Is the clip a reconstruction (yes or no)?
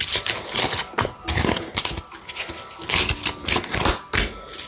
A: no